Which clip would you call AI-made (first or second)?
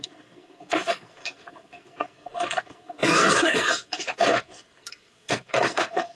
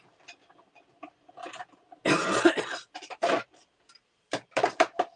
first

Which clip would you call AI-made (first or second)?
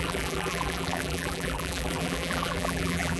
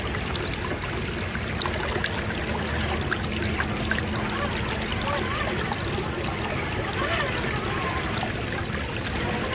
first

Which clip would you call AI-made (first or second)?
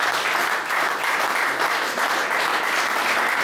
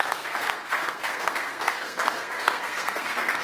second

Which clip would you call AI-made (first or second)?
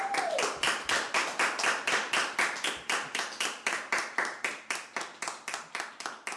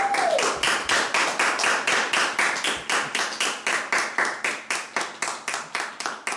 first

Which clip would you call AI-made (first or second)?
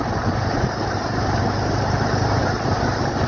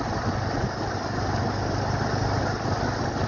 first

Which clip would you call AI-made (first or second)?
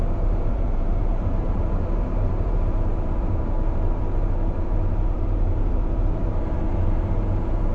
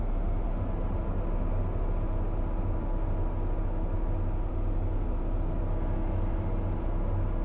first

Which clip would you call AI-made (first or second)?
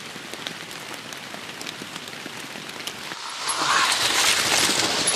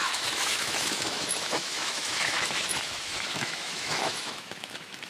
second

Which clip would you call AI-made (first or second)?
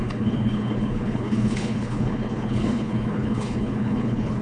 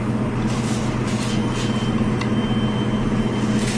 first